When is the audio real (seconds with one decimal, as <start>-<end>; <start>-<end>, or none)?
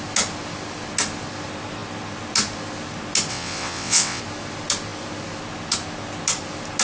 0.0-3.3; 4.2-6.8